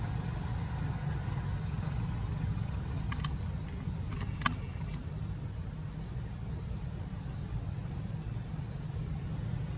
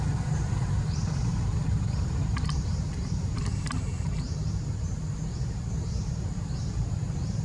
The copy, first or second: second